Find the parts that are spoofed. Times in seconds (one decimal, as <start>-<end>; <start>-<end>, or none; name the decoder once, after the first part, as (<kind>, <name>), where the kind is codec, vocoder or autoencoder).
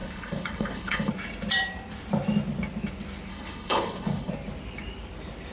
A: 0.0-1.1 (codec, HILCodec); 3.3-4.3